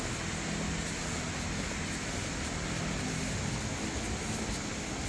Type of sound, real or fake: real